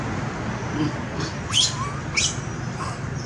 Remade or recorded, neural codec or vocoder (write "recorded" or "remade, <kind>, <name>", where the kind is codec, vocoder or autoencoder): recorded